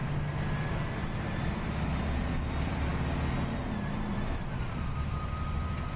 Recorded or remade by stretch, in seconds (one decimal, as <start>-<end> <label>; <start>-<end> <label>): 0.0-0.7 recorded; 0.7-2.9 remade; 2.9-4.1 recorded; 4.1-6.0 remade

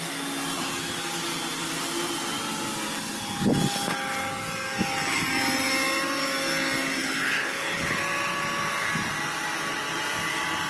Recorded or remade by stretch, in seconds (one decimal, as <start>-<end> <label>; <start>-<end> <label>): 0.0-7.0 recorded; 7.0-8.0 remade; 8.0-10.7 recorded

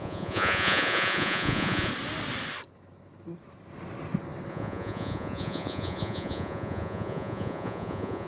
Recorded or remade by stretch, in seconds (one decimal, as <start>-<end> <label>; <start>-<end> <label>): 0.0-1.9 remade; 1.9-4.5 recorded; 4.5-8.3 remade

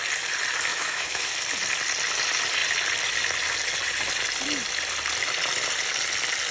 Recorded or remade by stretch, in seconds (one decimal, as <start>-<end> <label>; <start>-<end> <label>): 0.0-0.7 recorded; 0.7-1.3 remade; 1.3-6.5 recorded

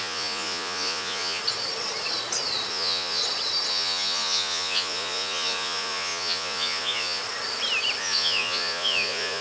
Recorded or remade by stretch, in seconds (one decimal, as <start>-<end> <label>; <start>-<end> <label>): 0.0-1.4 remade; 1.4-2.7 recorded; 2.7-3.2 remade; 3.2-3.7 recorded; 3.7-7.2 remade; 7.2-8.0 recorded; 8.0-9.4 remade

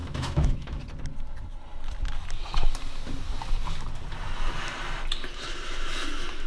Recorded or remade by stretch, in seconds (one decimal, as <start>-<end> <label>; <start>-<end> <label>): 0.0-0.8 remade; 0.8-6.5 recorded